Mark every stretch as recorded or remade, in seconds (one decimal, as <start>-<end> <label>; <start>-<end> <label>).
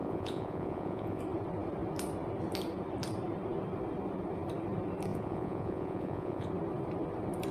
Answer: 0.0-1.2 remade; 1.2-5.1 recorded; 5.1-6.5 remade; 6.5-7.5 recorded